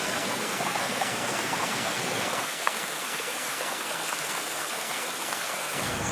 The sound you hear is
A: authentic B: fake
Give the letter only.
B